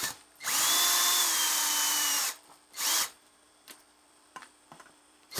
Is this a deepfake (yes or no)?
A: yes